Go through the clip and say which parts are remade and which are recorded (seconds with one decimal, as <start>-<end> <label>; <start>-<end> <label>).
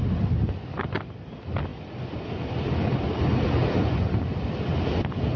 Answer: 0.0-5.4 recorded